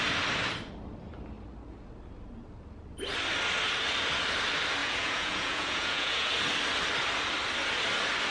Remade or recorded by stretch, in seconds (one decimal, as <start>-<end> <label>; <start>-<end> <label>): 0.0-4.8 recorded; 4.8-6.3 remade; 6.3-8.3 recorded

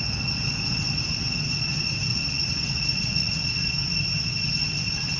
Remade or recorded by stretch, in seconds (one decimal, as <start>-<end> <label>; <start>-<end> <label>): 0.0-2.1 recorded; 2.1-3.4 remade; 3.4-5.2 recorded

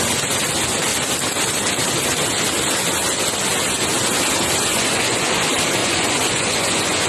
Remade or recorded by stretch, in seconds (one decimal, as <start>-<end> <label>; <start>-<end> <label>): 0.0-4.7 recorded; 4.7-5.3 remade; 5.3-5.8 recorded; 5.8-7.1 remade